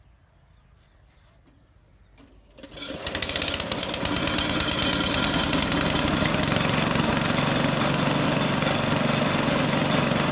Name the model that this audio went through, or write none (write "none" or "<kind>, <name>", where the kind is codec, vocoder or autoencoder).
none